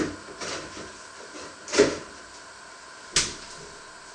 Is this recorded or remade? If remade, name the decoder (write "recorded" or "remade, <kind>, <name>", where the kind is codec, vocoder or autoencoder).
recorded